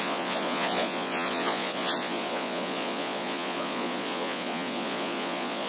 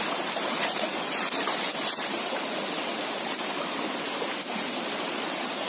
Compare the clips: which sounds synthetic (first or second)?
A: first